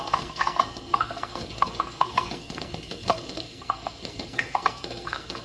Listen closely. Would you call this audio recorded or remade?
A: remade